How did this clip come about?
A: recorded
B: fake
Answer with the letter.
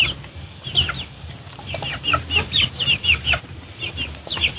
A